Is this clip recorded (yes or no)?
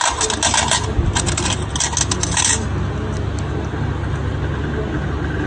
yes